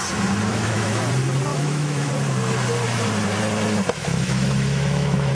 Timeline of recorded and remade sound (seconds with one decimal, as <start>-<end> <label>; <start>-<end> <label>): 0.0-0.5 recorded; 0.5-1.0 remade; 1.0-1.5 recorded; 1.5-2.1 remade; 2.1-4.0 recorded; 4.0-5.3 remade